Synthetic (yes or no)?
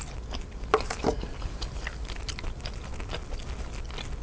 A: no